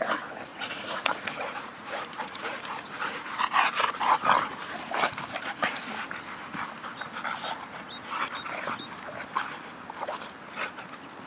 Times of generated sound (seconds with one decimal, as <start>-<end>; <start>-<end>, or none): 0.5-3.4

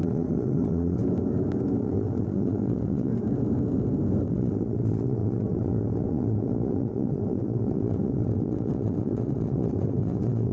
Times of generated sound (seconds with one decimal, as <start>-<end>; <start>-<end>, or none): 0.0-1.0; 1.8-3.1; 4.2-10.5

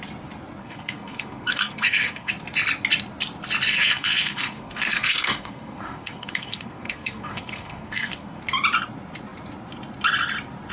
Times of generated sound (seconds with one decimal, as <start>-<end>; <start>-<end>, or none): 0.6-2.3; 3.7-8.4

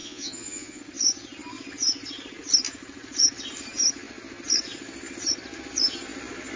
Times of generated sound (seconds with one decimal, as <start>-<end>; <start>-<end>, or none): 0.0-0.8

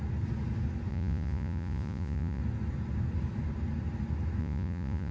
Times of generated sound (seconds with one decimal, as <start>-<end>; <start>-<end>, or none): 0.9-2.4; 4.4-5.1

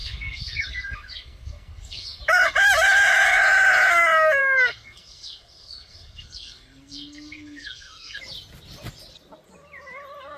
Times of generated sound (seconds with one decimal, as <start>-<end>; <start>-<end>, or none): 0.0-2.2; 4.4-8.2